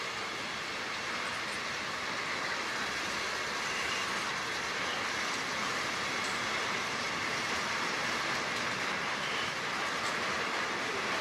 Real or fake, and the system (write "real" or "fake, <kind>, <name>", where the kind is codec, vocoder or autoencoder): real